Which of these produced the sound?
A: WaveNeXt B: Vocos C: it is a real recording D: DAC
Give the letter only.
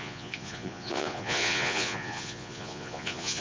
B